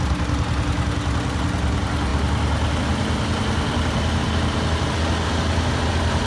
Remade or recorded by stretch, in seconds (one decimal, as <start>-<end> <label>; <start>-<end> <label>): 0.0-6.3 recorded